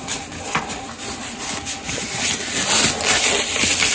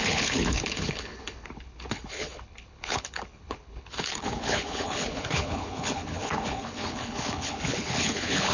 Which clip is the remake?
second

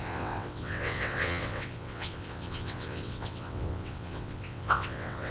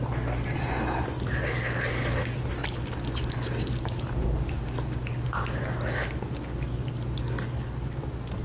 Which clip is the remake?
first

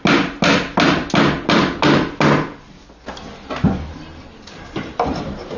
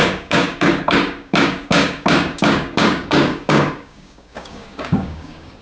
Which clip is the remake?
second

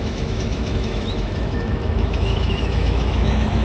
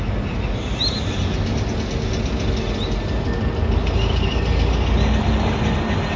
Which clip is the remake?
first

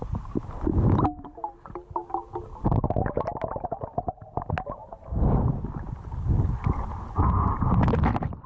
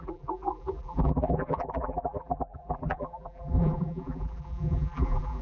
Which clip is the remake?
second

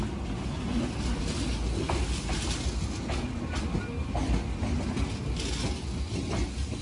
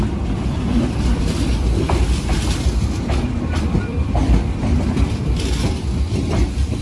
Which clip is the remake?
second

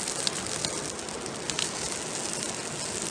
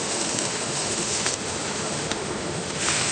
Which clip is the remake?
second